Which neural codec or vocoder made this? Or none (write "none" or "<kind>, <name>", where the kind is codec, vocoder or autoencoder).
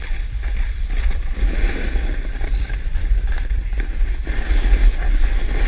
none